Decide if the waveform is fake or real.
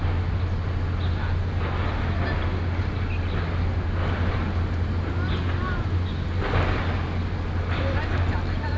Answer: real